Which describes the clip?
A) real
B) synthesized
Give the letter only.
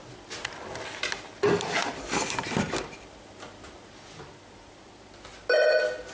A